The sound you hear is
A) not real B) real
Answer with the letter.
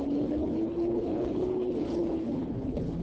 A